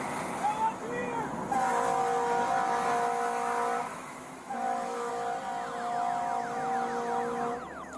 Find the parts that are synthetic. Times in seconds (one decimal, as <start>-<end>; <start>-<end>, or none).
3.9-5.1